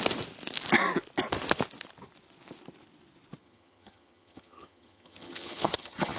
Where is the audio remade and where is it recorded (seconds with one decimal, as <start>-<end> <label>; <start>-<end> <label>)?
0.0-3.4 recorded; 3.4-6.2 remade